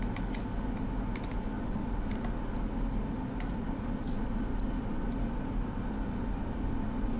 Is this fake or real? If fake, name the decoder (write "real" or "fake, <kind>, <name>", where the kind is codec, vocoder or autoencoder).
real